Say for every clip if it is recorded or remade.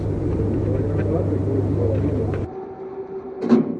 remade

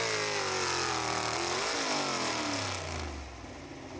recorded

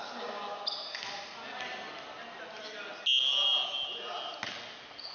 recorded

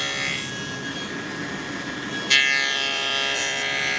recorded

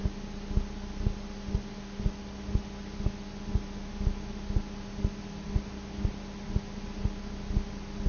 recorded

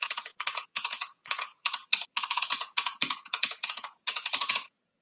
remade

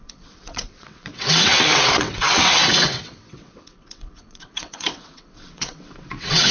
remade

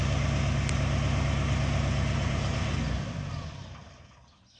recorded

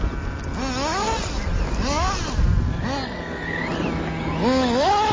recorded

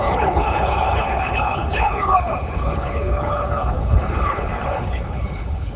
remade